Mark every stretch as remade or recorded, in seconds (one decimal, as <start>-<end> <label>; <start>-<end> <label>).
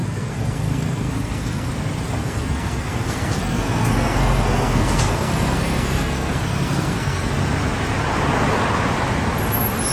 0.0-1.7 remade; 1.7-2.2 recorded; 2.2-7.3 remade; 7.3-9.9 recorded